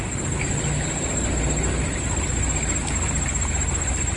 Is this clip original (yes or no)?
yes